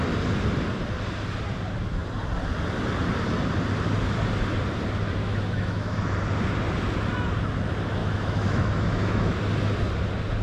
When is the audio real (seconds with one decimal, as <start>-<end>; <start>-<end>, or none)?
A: 0.0-5.2; 6.1-8.0; 9.4-10.4